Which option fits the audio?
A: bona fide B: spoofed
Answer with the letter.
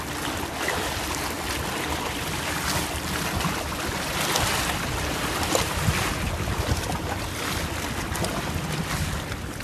A